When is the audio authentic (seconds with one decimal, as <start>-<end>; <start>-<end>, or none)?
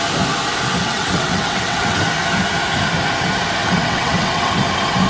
0.0-0.8; 2.0-3.6; 4.6-5.1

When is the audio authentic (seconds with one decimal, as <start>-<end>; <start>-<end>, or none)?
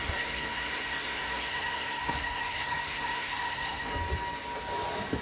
3.9-5.2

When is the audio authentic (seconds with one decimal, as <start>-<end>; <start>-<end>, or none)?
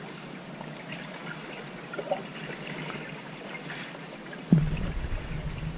0.0-5.8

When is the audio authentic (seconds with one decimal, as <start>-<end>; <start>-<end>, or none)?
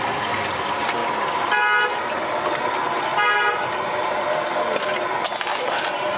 0.0-6.2